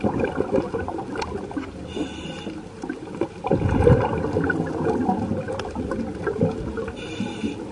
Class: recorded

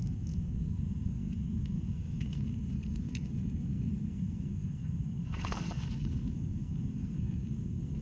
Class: remade